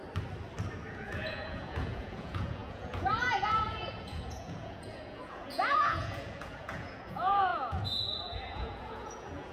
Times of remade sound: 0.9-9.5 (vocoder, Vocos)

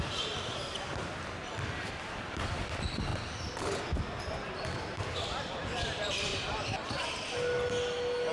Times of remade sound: 0.0-3.1 (vocoder, BigVGAN v2); 4.2-6.3

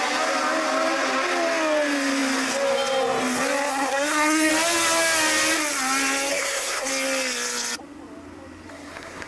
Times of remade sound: 3.7-4.5 (codec, SNAC); 6.3-6.9; 8.7-9.3

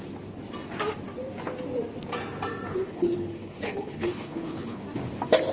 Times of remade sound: 2.7-4.8 (codec, HILCodec)

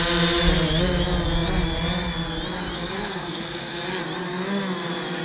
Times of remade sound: 2.7-3.8 (codec, SNAC)